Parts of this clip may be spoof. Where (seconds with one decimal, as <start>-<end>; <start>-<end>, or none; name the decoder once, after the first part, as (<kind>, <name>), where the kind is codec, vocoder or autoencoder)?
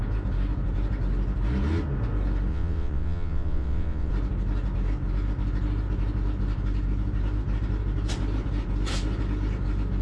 2.5-4.1 (vocoder, WaveNeXt)